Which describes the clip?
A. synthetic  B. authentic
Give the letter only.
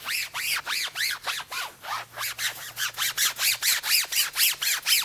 B